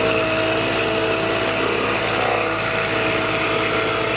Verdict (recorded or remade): recorded